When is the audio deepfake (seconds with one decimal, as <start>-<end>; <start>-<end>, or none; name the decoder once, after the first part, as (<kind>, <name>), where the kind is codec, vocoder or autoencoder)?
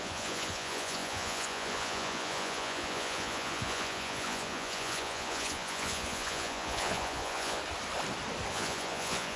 0.0-7.6 (vocoder, Vocos); 8.5-9.4